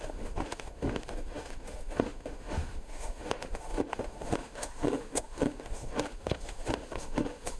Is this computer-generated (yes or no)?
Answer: yes